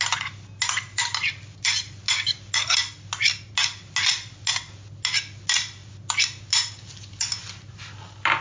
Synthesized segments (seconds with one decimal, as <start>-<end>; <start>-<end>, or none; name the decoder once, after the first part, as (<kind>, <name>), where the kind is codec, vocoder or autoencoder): none